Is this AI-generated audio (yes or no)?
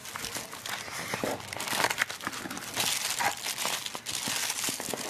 no